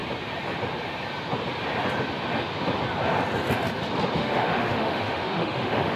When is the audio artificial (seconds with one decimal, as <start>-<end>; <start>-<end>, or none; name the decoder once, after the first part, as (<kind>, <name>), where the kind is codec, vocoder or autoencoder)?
4.2-6.0 (autoencoder, DAC-VAE)